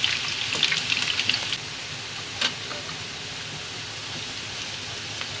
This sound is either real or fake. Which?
real